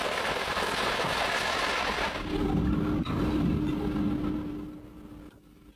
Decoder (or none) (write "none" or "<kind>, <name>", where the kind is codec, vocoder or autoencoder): none